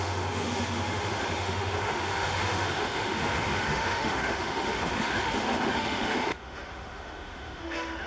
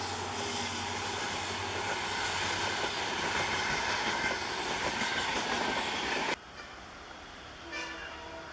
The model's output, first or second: first